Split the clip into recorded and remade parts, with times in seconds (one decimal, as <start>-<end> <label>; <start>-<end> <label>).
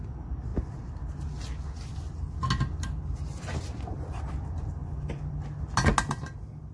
0.0-6.7 recorded